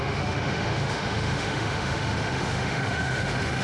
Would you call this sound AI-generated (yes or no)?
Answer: yes